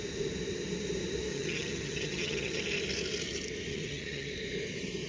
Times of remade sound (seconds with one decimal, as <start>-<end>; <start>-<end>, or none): 1.3-2.6; 3.7-4.3